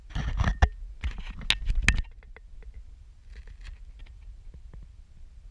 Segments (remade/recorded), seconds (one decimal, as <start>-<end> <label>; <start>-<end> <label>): 0.0-5.5 recorded